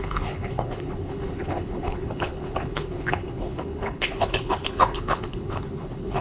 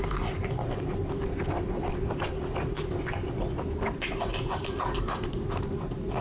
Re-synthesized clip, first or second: first